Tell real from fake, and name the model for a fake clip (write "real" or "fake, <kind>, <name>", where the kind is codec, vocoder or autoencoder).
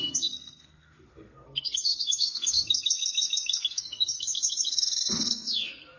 fake, codec, SNAC